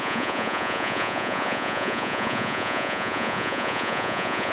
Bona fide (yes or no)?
no